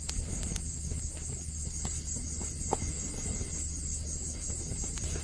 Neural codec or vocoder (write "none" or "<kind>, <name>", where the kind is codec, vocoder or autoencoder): none